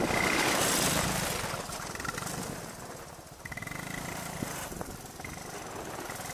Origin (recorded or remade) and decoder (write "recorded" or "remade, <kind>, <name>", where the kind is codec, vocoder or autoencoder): recorded